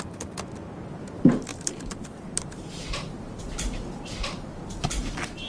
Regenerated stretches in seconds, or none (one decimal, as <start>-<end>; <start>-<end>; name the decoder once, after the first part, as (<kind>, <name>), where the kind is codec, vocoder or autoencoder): 1.5-3.4 (vocoder, BigVGAN v2)